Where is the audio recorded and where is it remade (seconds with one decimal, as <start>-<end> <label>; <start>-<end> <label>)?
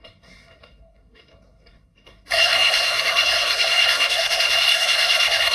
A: 0.0-5.5 remade